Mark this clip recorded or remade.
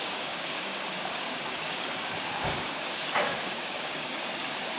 remade